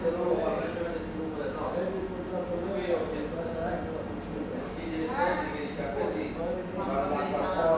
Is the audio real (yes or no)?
yes